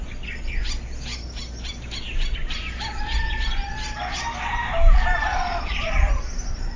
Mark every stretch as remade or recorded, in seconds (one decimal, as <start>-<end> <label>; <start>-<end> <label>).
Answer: 0.0-5.3 recorded; 5.3-6.1 remade; 6.1-6.8 recorded